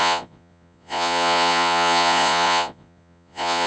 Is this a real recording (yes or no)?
no